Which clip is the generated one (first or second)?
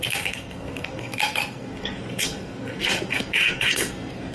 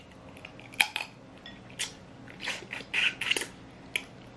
first